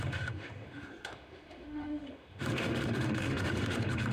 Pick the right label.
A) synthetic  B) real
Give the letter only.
A